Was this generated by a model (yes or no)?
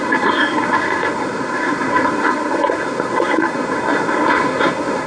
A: yes